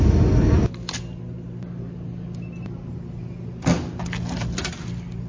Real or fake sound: real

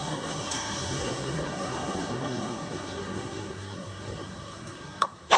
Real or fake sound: fake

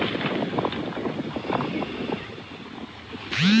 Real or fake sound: real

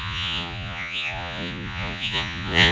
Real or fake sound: fake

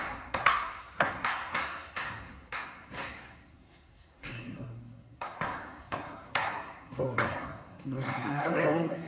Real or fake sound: fake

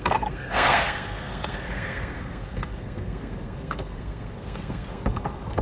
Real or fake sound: fake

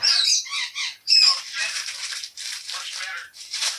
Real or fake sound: fake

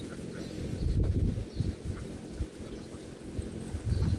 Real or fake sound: real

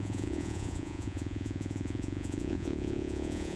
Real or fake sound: fake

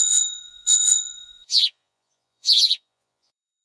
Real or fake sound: fake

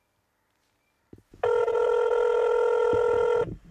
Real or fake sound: real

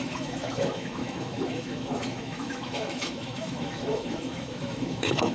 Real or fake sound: fake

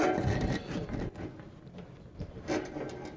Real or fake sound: real